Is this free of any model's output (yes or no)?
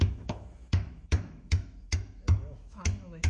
no